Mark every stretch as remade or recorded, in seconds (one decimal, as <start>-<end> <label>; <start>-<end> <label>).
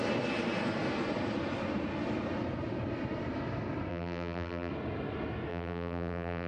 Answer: 0.0-3.9 recorded; 3.9-4.7 remade; 4.7-5.5 recorded; 5.5-6.5 remade